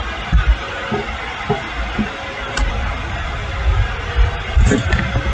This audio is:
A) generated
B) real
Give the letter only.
B